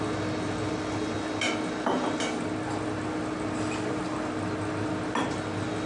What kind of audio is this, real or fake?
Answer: real